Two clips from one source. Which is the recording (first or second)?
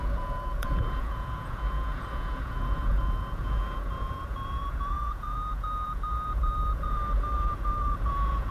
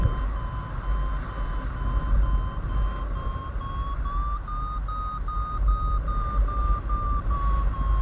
second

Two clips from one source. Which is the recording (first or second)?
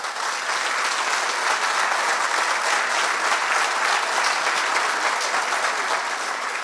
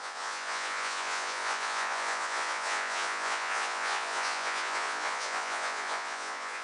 first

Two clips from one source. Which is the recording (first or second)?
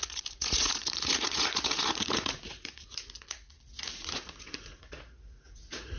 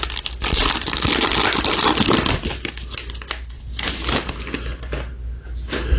second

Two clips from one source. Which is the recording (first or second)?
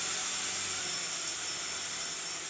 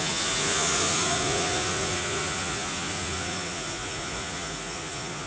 first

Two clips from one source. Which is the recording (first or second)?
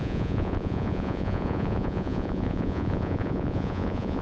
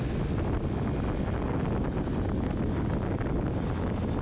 second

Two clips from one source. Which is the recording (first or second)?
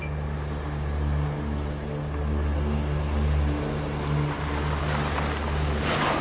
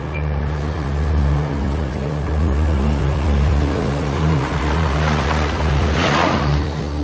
first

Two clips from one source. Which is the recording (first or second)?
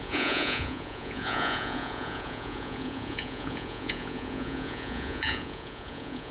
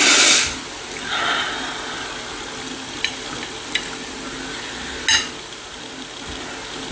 second